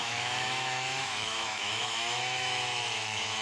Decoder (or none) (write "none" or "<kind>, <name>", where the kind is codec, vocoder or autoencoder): autoencoder, DAC-VAE